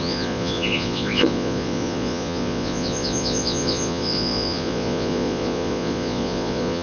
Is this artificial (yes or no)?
yes